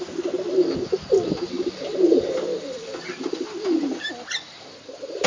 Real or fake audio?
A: real